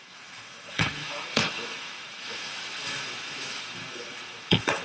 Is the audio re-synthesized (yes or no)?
yes